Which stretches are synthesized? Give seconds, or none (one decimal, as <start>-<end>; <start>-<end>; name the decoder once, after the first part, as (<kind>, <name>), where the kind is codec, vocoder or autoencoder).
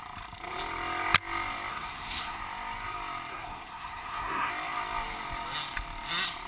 1.7-2.4 (codec, SNAC); 3.3-4.5